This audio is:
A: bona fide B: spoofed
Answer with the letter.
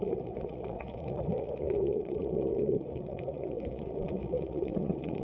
B